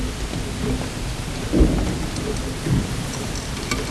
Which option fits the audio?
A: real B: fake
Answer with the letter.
A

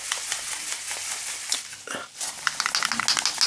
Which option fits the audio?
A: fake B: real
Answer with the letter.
B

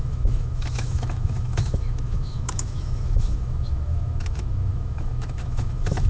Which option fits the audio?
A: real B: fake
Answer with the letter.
B